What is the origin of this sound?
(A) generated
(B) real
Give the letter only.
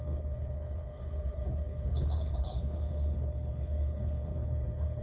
A